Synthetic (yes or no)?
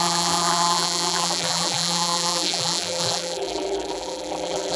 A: yes